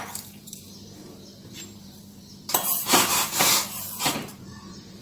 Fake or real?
fake